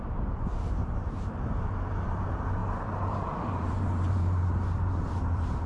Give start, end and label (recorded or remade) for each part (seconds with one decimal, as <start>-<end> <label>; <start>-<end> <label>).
0.0-5.7 remade